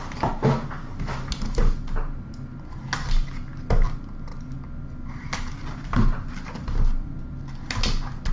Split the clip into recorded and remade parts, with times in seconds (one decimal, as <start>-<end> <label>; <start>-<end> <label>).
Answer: 0.0-8.3 recorded